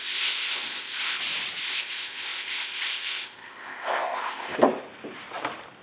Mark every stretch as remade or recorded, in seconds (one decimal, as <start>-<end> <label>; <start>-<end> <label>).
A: 0.0-1.2 remade; 1.2-1.6 recorded; 1.6-4.6 remade; 4.6-5.8 recorded

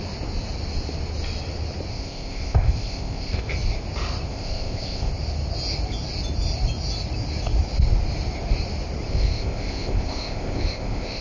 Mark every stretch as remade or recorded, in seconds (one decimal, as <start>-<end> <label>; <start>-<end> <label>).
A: 0.0-1.9 recorded; 1.9-3.5 remade; 3.5-4.3 recorded; 4.3-5.1 remade; 5.1-9.1 recorded; 9.1-11.2 remade

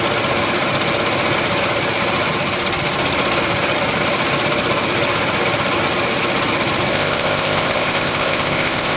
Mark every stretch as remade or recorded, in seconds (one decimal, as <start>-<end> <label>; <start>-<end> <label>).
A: 0.0-6.9 recorded; 6.9-9.0 remade

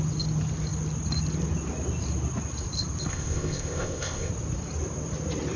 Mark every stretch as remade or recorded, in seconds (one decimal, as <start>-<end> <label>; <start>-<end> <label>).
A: 0.0-3.1 recorded; 3.1-4.3 remade; 4.3-5.6 recorded

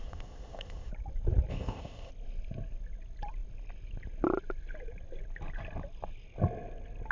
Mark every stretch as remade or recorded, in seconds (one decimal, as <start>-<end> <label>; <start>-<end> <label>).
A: 0.0-0.9 remade; 0.9-1.5 recorded; 1.5-2.1 remade; 2.1-7.1 recorded